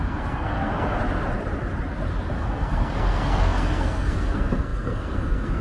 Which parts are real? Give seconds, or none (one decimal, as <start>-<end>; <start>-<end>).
1.0-2.4